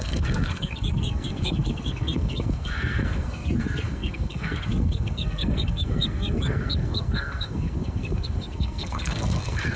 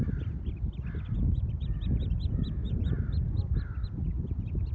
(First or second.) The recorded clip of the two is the second